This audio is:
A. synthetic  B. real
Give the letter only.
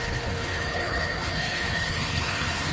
A